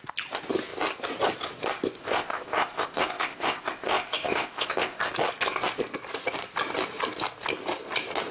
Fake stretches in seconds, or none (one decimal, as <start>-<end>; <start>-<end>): 2.0-5.1